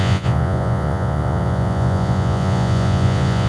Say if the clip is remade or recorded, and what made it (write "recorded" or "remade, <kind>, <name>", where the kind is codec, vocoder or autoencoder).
remade, vocoder, Vocos